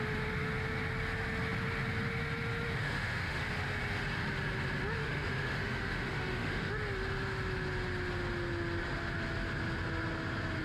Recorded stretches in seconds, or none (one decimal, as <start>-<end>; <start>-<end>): 0.0-2.8; 3.4-5.0; 6.7-10.6